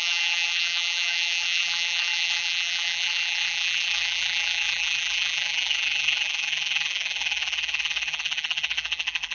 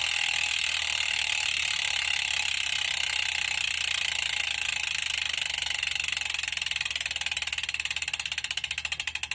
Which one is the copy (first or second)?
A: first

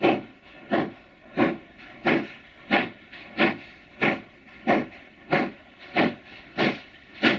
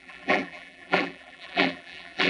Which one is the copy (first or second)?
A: second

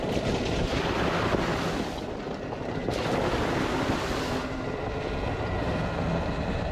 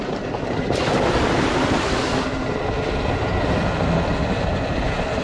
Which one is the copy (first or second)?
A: second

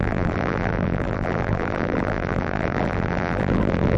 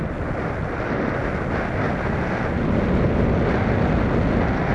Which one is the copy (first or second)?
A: first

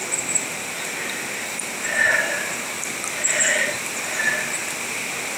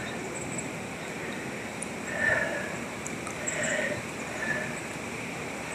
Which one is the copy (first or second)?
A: second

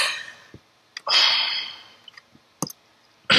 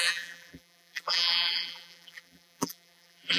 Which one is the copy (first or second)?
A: second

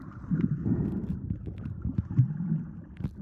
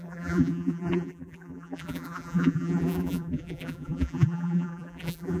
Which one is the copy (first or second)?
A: second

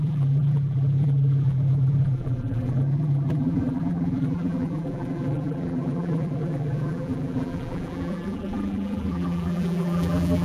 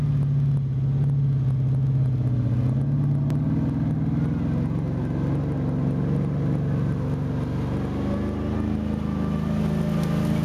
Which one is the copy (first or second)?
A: first